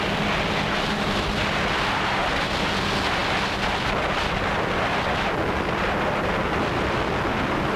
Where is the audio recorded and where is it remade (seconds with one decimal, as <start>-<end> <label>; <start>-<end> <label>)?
0.0-7.8 recorded